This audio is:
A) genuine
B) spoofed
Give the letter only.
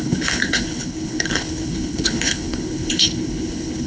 B